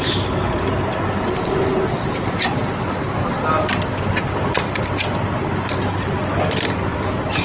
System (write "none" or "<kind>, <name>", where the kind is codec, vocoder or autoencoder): none